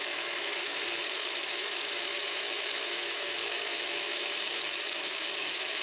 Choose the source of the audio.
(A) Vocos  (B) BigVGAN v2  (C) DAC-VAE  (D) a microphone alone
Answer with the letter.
C